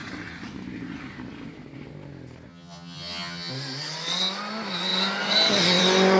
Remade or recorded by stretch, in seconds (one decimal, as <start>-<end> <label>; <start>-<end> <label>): 0.0-2.5 recorded; 2.5-3.5 remade; 3.5-6.2 recorded